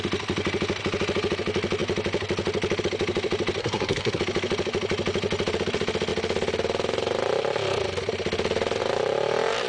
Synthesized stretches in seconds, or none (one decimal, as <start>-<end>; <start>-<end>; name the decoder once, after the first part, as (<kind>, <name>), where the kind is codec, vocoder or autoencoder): 3.6-4.2 (codec, SNAC)